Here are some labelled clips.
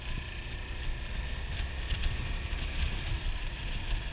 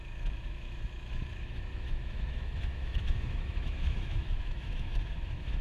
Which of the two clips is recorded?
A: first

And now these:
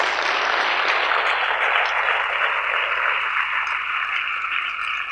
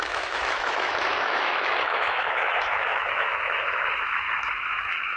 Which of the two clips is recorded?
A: first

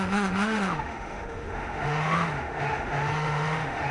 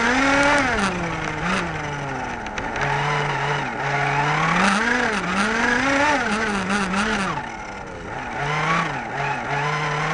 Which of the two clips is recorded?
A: second